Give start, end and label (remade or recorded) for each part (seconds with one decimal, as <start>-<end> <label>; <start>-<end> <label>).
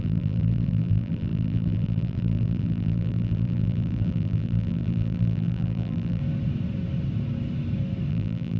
0.0-6.2 remade; 6.2-8.1 recorded; 8.1-8.6 remade